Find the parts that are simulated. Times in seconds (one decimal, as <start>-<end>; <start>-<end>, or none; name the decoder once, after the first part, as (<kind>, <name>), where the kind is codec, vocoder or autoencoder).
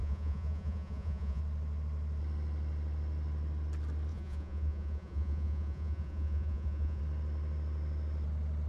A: 0.0-1.4 (vocoder, Vocos); 4.1-7.0